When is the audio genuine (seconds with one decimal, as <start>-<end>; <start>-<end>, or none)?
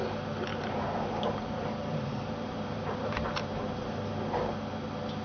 0.0-0.5; 3.6-5.2